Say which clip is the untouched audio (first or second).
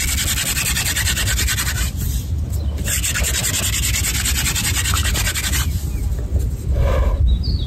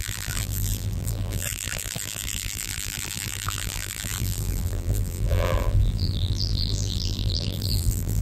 first